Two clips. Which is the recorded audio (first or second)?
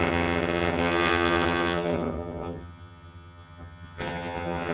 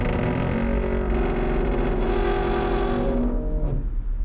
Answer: second